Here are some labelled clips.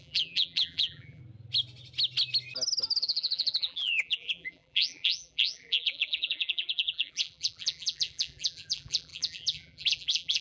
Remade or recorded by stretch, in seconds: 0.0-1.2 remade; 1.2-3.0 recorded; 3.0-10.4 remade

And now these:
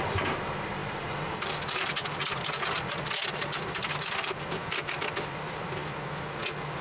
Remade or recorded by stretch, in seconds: 0.0-5.8 remade; 5.8-6.8 recorded

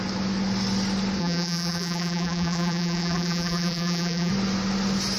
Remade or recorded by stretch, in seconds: 0.0-1.2 recorded; 1.2-4.3 remade; 4.3-5.2 recorded

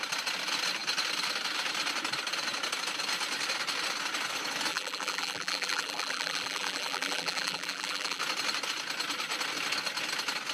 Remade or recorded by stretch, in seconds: 0.0-4.7 recorded; 4.7-8.2 remade; 8.2-10.5 recorded